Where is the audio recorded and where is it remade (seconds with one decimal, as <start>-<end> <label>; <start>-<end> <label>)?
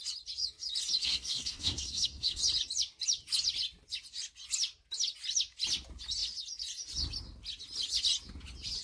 0.0-1.0 recorded; 1.0-2.4 remade; 2.4-8.8 recorded